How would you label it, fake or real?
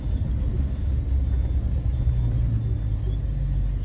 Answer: real